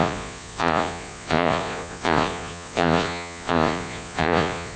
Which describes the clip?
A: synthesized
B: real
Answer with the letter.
A